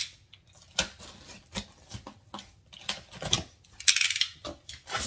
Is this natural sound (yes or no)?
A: yes